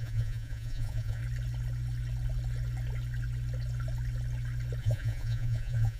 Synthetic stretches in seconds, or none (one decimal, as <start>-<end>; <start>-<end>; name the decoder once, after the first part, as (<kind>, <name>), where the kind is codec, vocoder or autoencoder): 0.0-1.2 (vocoder, Vocos); 4.8-6.0